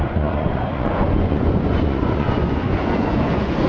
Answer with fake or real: fake